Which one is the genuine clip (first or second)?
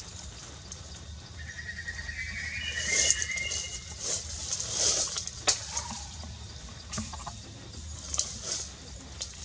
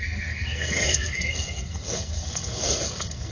first